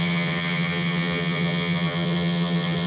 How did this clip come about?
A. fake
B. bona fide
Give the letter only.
A